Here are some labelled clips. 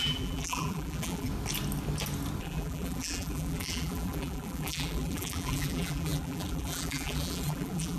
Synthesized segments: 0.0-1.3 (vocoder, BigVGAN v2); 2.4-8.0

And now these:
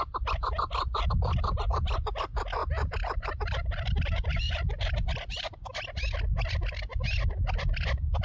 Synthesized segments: 2.6-5.6 (vocoder, BigVGAN v2)

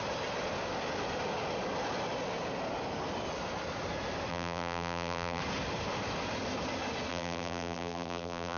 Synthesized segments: 4.3-5.4 (vocoder, BigVGAN v2); 7.1-8.6

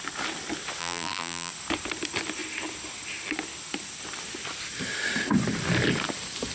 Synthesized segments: 0.8-1.5 (vocoder, BigVGAN v2)

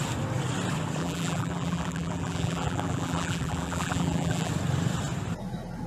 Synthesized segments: 1.0-4.5 (vocoder, BigVGAN v2)